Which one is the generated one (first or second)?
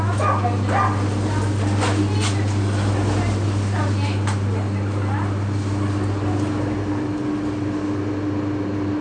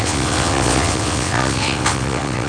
second